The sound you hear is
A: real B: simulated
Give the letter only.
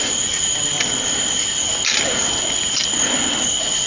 A